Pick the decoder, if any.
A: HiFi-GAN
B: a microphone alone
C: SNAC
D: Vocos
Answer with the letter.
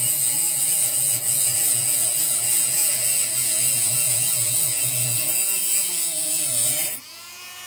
D